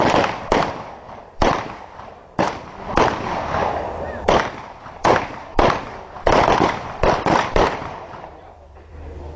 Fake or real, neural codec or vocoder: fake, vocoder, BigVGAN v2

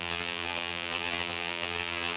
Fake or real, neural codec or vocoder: fake, vocoder, BigVGAN v2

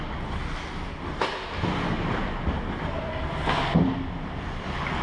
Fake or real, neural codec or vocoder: real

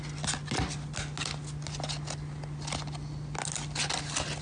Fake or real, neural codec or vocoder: real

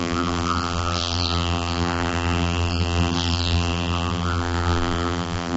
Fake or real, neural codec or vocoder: fake, vocoder, BigVGAN v2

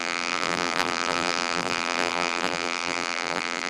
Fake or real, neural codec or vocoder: fake, vocoder, BigVGAN v2